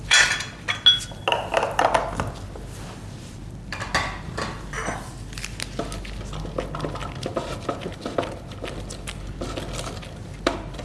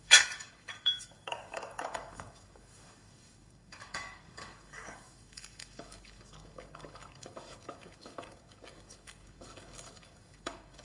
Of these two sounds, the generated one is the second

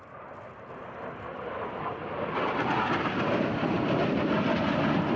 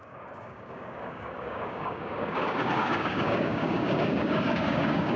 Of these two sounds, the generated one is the second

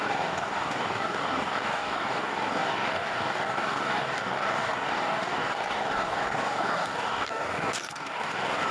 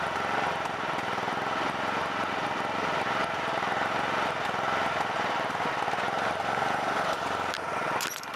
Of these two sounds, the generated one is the first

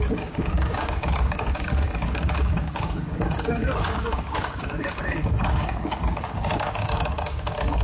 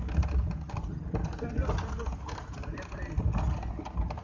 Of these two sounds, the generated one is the first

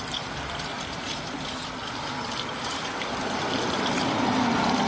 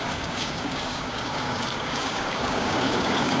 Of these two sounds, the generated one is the second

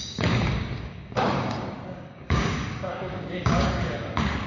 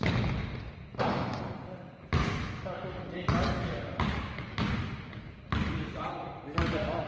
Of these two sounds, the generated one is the first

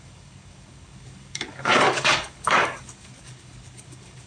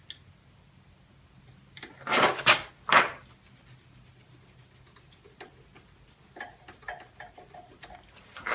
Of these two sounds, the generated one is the first